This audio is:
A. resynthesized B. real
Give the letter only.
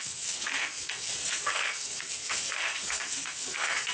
A